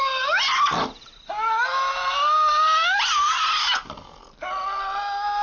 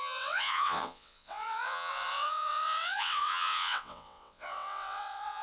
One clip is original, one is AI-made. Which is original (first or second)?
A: first